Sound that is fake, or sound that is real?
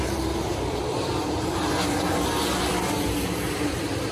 fake